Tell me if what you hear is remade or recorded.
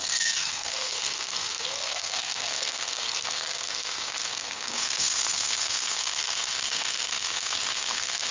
remade